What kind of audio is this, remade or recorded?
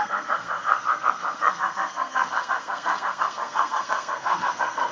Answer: remade